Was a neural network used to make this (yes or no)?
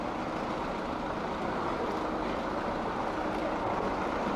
no